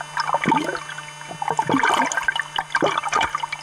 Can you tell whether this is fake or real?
real